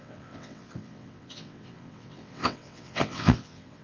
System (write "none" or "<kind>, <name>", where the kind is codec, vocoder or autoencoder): vocoder, WaveNeXt